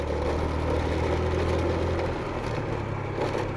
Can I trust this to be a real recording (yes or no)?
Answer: yes